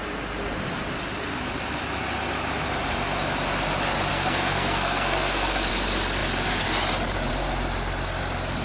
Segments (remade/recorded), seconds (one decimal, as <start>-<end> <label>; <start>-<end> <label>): 0.0-4.1 recorded; 4.1-5.7 remade; 5.7-8.6 recorded